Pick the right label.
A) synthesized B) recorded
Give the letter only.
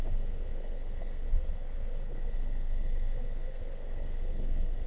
A